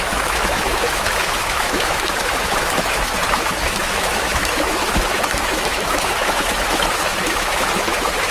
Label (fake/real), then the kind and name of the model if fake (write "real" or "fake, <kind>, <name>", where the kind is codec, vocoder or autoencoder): fake, autoencoder, DAC-VAE